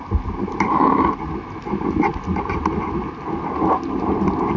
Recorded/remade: recorded